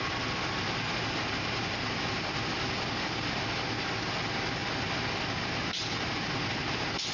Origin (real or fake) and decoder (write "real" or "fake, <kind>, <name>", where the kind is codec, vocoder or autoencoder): real